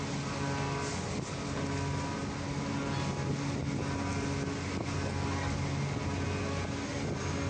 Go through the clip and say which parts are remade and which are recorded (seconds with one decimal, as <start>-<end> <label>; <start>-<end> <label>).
0.0-7.5 recorded